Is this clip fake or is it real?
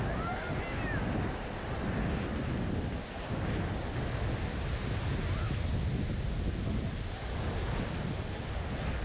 real